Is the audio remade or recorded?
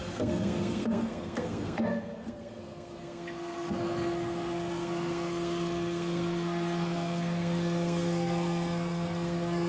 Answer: remade